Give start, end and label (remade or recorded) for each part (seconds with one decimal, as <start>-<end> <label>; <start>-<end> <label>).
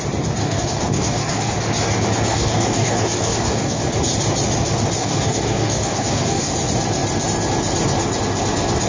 0.0-0.4 recorded; 0.4-1.5 remade; 1.5-2.3 recorded; 2.3-3.8 remade; 3.8-5.0 recorded; 5.0-6.5 remade; 6.5-8.9 recorded